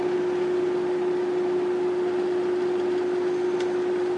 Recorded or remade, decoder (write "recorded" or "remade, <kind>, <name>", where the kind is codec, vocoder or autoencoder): recorded